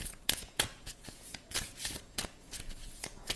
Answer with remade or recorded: remade